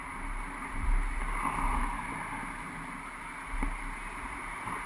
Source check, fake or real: real